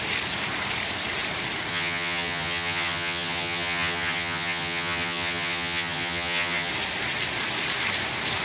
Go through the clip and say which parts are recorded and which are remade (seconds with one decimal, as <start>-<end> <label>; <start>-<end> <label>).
0.0-1.7 recorded; 1.7-6.7 remade; 6.7-8.4 recorded